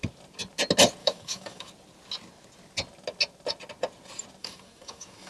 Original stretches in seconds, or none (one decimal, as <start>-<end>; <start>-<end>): 0.0-1.0; 1.7-4.4